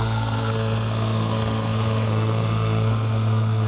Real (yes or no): no